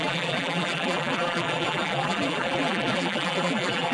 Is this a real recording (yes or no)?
no